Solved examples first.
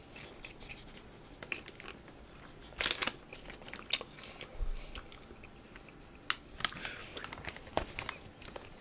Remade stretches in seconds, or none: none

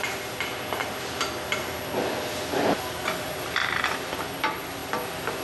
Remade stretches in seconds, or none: 3.6-4.6 (vocoder, BigVGAN v2)

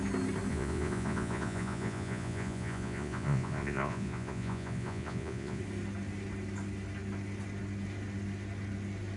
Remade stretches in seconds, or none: 0.5-5.6 (vocoder, Vocos)